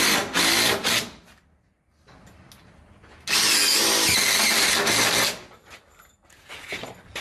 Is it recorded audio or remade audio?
recorded